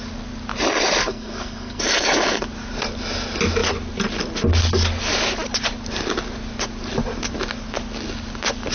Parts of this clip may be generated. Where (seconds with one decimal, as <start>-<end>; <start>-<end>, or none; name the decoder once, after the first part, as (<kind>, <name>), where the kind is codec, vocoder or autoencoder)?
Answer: 1.0-1.8 (codec, SNAC)